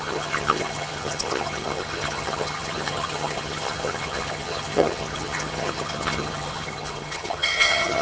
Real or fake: fake